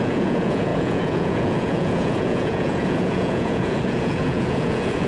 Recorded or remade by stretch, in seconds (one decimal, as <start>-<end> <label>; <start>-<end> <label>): 0.0-5.1 remade